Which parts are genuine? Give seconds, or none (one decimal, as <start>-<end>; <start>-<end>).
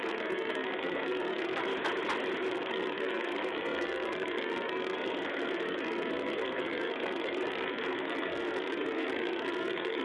1.7-2.5